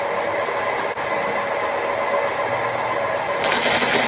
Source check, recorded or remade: recorded